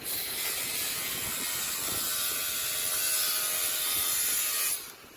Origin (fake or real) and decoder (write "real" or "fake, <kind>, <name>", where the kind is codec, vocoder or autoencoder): real